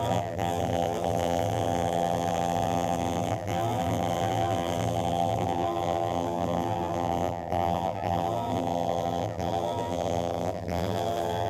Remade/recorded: remade